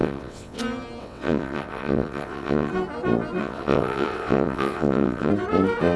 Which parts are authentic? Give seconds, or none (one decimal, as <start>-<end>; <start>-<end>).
0.6-1.0; 2.7-3.4; 5.3-6.0